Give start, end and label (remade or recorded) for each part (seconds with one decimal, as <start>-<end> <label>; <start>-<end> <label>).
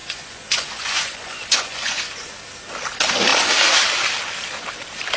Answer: 0.0-2.4 remade; 2.4-5.2 recorded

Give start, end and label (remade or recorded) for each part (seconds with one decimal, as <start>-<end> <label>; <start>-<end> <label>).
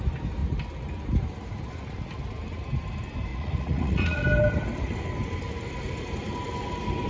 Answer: 0.0-3.3 recorded; 3.3-4.2 remade; 4.2-7.1 recorded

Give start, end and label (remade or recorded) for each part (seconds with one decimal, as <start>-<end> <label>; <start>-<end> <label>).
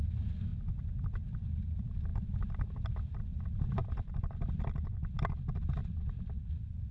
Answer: 0.0-6.9 recorded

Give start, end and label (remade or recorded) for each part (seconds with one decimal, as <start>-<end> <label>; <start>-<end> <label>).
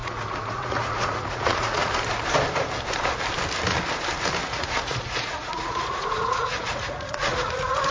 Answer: 0.0-1.9 remade; 1.9-4.4 recorded; 4.4-7.9 remade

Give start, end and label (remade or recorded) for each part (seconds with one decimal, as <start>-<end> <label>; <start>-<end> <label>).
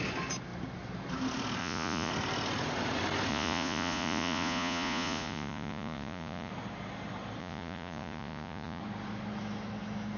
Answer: 0.0-1.6 recorded; 1.6-2.1 remade; 2.1-3.3 recorded; 3.3-6.5 remade; 6.5-7.4 recorded; 7.4-8.8 remade; 8.8-10.2 recorded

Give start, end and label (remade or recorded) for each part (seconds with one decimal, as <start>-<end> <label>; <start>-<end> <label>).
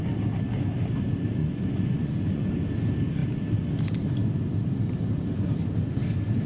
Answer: 0.0-1.4 recorded; 1.4-2.5 remade; 2.5-6.5 recorded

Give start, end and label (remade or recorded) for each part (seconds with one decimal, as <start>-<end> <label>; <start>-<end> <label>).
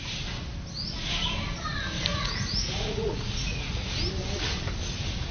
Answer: 0.0-2.1 recorded; 2.1-4.0 remade; 4.0-5.3 recorded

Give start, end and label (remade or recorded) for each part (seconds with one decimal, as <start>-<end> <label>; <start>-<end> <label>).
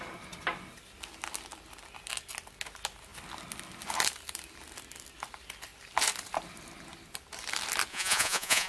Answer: 0.0-7.9 recorded; 7.9-8.7 remade